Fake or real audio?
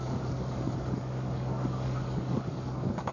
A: fake